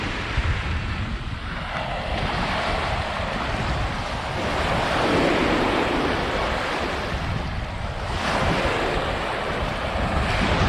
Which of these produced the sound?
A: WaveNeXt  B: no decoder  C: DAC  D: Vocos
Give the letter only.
B